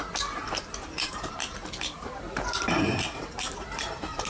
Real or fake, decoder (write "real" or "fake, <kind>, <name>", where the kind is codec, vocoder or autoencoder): fake, vocoder, BigVGAN v2